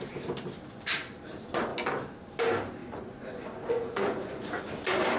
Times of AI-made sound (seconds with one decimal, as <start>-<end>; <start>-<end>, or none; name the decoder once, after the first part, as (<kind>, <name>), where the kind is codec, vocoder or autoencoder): 2.8-4.6 (vocoder, Vocos)